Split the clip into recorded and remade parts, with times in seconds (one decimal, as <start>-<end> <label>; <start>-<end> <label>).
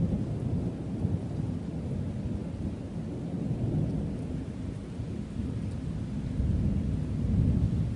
0.0-8.0 recorded